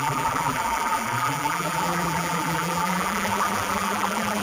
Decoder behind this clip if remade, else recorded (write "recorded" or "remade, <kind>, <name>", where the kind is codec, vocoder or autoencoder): remade, vocoder, BigVGAN v2